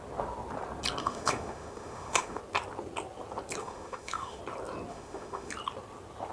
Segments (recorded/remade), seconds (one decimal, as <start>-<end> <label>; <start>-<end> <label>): 0.0-1.0 recorded; 1.0-2.4 remade; 2.4-3.6 recorded; 3.6-4.4 remade; 4.4-4.9 recorded; 4.9-5.5 remade; 5.5-6.3 recorded